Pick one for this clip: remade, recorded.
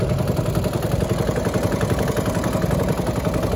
recorded